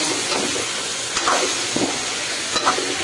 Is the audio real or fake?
fake